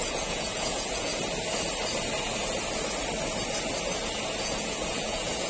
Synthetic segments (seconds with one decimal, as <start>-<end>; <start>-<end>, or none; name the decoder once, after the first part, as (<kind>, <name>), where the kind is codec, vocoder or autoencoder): 0.0-1.1 (vocoder, Vocos); 4.4-5.5